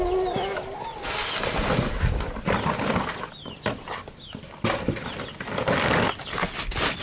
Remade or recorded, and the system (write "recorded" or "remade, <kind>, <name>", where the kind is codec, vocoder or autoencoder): recorded